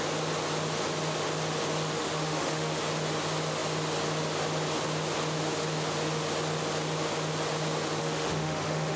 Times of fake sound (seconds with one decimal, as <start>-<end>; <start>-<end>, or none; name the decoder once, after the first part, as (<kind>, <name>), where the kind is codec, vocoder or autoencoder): 2.0-2.8 (autoencoder, DAC-VAE); 8.0-9.0